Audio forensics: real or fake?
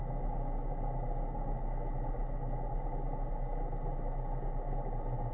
real